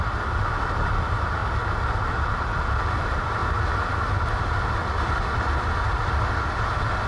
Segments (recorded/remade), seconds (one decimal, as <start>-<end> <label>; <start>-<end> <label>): 0.0-1.4 remade; 1.4-2.4 recorded; 2.4-3.4 remade; 3.4-4.7 recorded; 4.7-7.1 remade